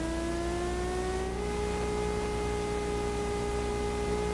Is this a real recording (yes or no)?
yes